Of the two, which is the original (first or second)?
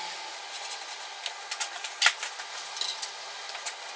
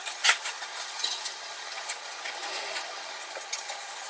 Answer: first